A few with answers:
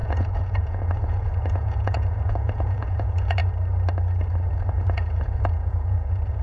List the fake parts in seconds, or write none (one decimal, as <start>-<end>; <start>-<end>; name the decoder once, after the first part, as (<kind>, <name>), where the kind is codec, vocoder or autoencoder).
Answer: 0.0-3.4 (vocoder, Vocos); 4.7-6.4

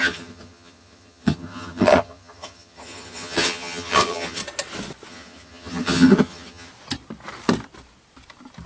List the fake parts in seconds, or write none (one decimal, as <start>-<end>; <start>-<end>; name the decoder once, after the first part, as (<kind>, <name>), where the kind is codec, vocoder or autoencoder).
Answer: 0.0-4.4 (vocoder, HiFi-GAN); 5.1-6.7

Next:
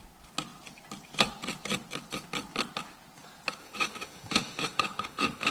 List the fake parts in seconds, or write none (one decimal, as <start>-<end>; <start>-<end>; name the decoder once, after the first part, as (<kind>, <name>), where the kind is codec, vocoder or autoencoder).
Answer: 3.6-5.5 (autoencoder, DAC-VAE)